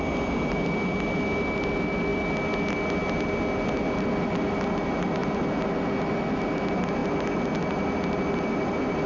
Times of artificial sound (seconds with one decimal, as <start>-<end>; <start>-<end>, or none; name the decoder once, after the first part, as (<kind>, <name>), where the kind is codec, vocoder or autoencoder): none